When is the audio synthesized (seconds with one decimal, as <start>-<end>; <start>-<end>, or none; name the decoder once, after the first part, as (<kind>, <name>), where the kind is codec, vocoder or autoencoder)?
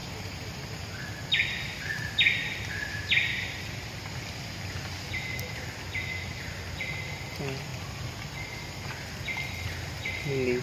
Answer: 0.0-0.9 (vocoder, BigVGAN v2)